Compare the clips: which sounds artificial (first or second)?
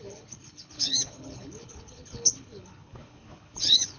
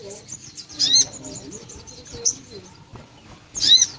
first